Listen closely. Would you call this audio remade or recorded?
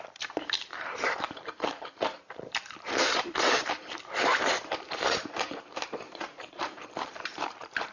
remade